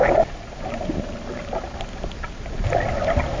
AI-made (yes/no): no